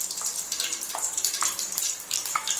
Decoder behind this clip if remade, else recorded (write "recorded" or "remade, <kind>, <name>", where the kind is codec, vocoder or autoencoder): remade, vocoder, BigVGAN v2